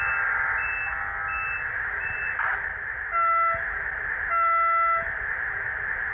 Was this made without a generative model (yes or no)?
yes